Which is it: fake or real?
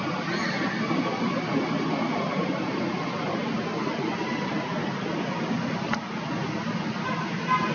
real